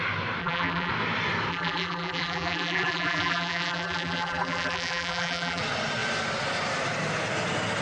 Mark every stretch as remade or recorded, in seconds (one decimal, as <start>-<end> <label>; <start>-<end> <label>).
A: 0.0-0.4 recorded; 0.4-0.9 remade; 0.9-1.5 recorded; 1.5-5.6 remade; 5.6-7.8 recorded